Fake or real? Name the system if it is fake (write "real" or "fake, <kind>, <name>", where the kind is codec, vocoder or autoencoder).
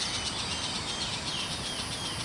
real